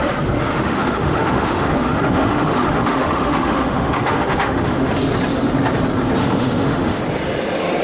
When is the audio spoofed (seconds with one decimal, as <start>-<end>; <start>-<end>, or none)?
0.5-4.9; 6.2-7.0